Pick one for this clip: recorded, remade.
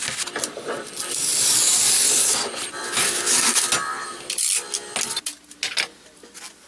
recorded